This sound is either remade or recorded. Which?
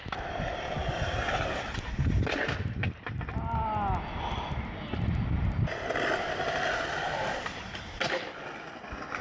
recorded